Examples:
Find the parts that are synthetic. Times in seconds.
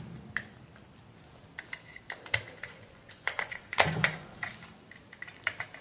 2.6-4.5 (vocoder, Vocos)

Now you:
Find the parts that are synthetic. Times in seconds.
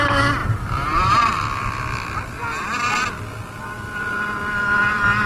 none